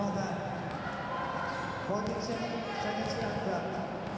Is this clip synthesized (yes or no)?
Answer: no